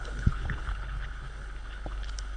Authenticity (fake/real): fake